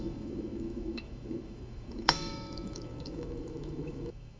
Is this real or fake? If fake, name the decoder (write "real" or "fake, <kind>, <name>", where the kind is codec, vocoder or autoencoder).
fake, autoencoder, DAC-VAE